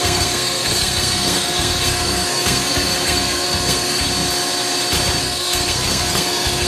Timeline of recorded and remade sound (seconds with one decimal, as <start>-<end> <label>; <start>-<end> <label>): 0.0-4.0 remade; 4.0-5.2 recorded; 5.2-6.7 remade